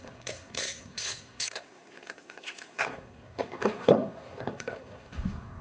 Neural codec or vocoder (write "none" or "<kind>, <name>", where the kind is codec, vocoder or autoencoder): codec, SNAC